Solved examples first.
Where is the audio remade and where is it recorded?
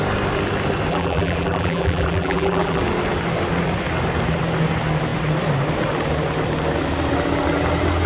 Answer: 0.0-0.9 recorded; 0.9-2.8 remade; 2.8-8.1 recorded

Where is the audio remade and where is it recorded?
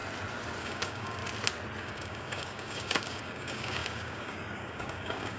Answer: 0.0-0.6 recorded; 0.6-1.2 remade; 1.2-1.8 recorded; 1.8-5.4 remade